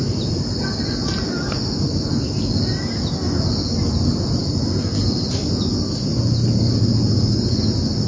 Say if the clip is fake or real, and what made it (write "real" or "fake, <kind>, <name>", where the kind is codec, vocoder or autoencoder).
real